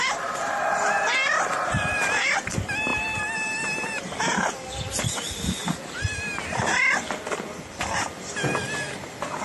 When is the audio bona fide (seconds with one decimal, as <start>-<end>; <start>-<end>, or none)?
0.0-9.4